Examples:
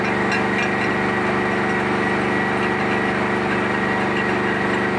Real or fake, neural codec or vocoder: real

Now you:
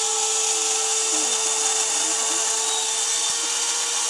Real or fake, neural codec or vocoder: real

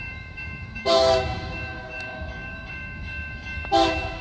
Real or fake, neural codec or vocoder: fake, autoencoder, DAC-VAE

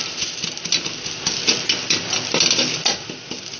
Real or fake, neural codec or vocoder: real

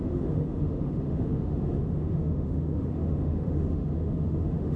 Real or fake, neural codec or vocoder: fake, autoencoder, DAC-VAE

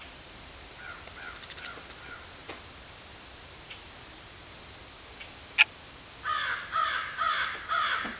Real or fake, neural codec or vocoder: real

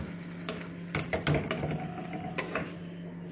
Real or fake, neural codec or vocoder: real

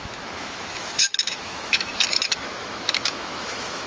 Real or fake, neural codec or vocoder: fake, autoencoder, DAC-VAE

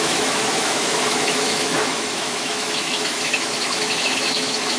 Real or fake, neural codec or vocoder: fake, autoencoder, DAC-VAE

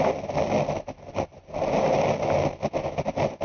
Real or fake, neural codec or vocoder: real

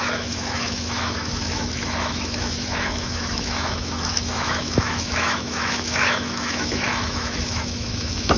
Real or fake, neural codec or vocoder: fake, autoencoder, DAC-VAE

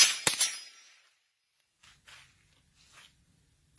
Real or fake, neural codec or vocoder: real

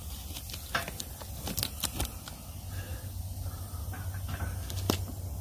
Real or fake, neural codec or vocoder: real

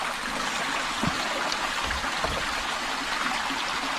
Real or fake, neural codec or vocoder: real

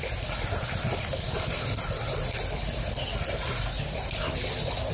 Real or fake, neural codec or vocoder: real